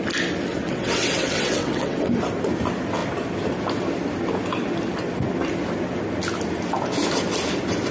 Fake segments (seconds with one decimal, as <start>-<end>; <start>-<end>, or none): 0.5-2.1